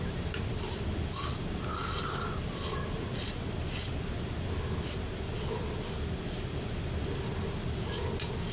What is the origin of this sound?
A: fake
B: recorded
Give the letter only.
B